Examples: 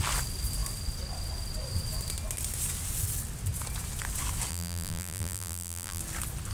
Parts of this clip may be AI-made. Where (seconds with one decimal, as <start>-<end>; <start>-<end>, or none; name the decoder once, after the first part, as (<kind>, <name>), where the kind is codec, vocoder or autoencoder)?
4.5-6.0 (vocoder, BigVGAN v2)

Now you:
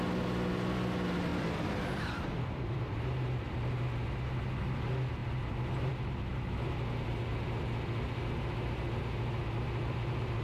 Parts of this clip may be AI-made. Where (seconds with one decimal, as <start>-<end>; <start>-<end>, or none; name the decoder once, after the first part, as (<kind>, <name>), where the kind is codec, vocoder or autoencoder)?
1.3-3.7 (vocoder, BigVGAN v2)

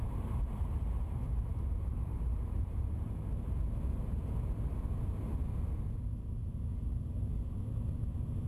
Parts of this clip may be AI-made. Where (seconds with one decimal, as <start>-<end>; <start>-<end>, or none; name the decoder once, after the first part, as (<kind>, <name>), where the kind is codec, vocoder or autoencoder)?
0.0-3.5 (vocoder, BigVGAN v2)